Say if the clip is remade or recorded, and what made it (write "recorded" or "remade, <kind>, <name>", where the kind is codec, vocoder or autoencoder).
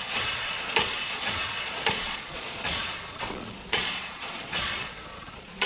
remade, vocoder, Vocos